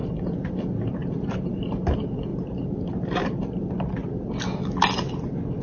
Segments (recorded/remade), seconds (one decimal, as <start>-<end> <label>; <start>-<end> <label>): 0.0-1.0 recorded; 1.0-1.6 remade; 1.6-2.3 recorded; 2.3-3.7 remade; 3.7-5.6 recorded